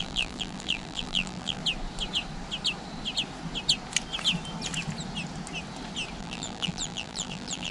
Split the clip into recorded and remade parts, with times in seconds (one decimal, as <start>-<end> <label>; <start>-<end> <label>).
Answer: 0.0-1.6 remade; 1.6-6.2 recorded; 6.2-7.7 remade

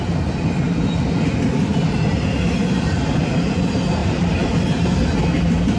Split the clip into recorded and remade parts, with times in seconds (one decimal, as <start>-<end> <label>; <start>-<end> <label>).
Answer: 0.0-4.0 recorded; 4.0-4.5 remade; 4.5-5.8 recorded